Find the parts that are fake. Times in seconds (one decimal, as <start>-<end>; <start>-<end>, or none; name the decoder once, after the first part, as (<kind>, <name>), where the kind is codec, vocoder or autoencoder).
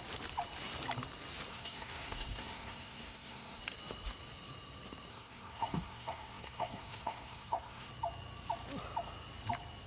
1.5-3.6 (codec, SNAC); 5.1-7.9